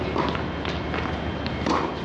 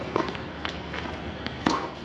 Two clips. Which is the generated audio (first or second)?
second